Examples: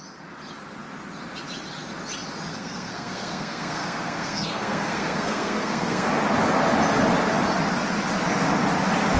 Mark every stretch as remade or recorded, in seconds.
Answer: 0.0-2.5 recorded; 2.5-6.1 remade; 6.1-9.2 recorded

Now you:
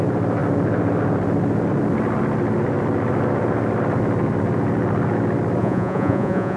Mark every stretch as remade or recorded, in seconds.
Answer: 0.0-5.6 recorded; 5.6-6.6 remade

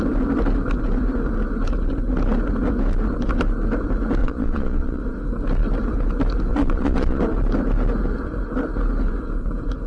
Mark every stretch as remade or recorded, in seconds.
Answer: 0.0-4.2 recorded; 4.2-5.0 remade; 5.0-6.5 recorded; 6.5-7.2 remade; 7.2-9.9 recorded